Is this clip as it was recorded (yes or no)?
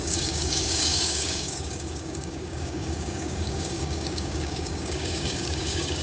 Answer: no